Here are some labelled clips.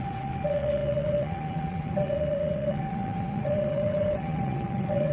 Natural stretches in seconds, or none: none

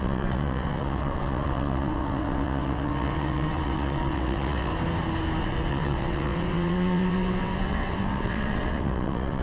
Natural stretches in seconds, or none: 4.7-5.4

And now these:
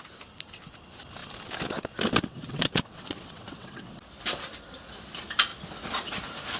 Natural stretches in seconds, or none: 0.0-2.3; 3.9-6.6

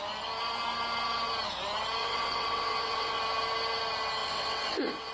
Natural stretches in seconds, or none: 0.0-2.0; 3.2-4.2

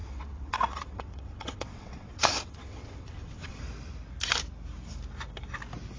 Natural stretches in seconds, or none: 3.6-6.0

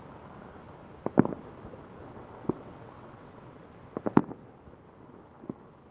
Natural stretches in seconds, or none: 0.0-2.0; 3.5-5.9

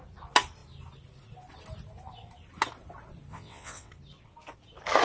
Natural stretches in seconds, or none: 0.0-3.3; 3.9-5.0

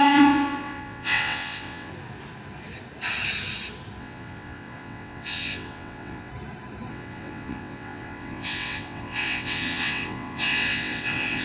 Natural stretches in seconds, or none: 1.9-4.0; 6.3-6.9